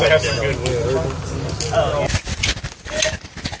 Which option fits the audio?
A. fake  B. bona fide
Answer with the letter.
B